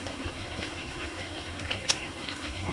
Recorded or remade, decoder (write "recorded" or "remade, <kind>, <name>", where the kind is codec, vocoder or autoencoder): remade, codec, SNAC